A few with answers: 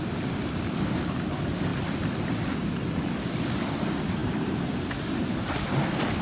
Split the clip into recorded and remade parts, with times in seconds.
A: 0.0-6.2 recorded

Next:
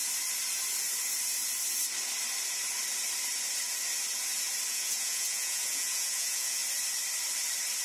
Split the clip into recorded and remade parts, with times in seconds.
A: 0.0-4.7 recorded; 4.7-6.6 remade; 6.6-7.8 recorded

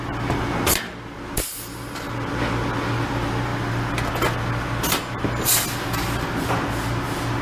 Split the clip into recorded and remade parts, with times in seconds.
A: 0.0-7.4 recorded